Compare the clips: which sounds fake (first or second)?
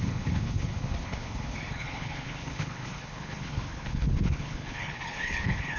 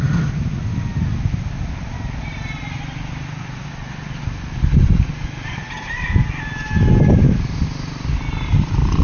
first